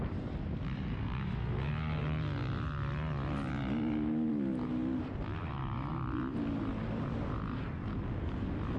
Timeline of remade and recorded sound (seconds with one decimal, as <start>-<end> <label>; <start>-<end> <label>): 0.0-8.8 recorded